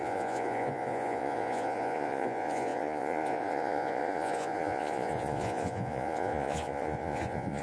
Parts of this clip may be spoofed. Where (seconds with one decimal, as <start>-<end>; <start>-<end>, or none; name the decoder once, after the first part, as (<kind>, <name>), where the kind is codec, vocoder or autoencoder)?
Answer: 0.0-7.6 (vocoder, Vocos)